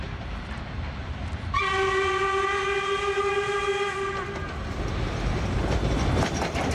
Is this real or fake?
real